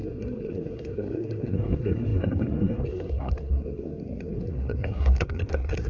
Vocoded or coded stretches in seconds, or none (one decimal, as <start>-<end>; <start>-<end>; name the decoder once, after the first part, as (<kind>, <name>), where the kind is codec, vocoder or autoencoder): 0.0-5.9 (codec, SNAC)